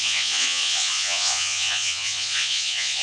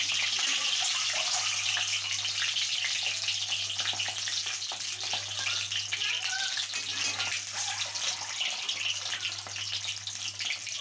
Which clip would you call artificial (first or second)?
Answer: first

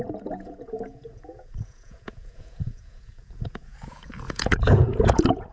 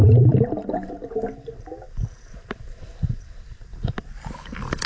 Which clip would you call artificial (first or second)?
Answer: first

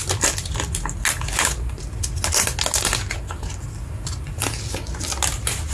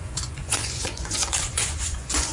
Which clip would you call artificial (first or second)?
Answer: second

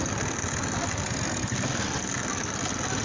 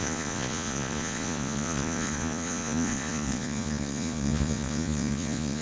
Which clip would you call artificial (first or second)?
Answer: second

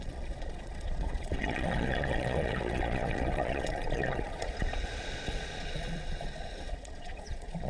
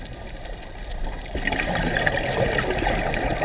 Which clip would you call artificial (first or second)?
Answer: first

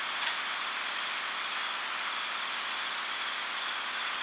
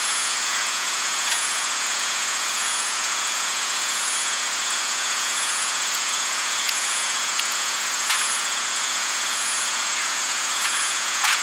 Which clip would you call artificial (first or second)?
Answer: second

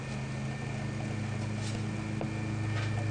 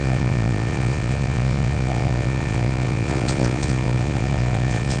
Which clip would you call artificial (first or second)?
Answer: second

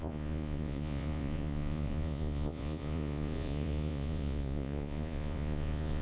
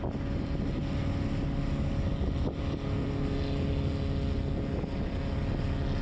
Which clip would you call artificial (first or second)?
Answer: first